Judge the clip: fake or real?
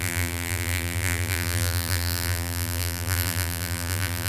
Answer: fake